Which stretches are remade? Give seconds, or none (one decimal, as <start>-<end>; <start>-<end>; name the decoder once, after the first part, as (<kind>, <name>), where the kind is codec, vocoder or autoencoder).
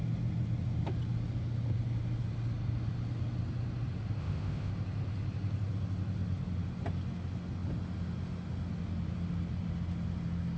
4.2-4.7 (codec, ZipCodec)